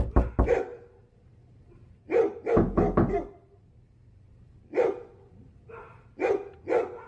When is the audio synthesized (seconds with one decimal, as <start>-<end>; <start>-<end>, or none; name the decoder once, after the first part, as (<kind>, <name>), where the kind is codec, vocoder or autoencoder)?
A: none